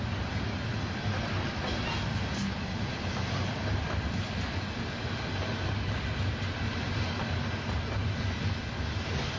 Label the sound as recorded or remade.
recorded